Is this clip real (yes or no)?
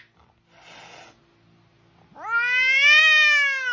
yes